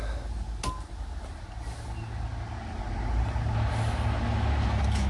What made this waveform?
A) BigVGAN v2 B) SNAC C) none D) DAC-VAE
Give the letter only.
C